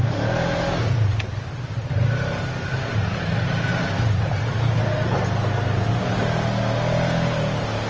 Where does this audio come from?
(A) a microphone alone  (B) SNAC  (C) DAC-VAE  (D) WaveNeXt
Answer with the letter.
A